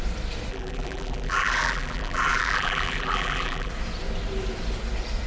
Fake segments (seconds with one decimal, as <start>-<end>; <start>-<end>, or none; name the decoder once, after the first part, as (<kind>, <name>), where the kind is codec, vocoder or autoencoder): 0.5-3.7 (vocoder, BigVGAN v2)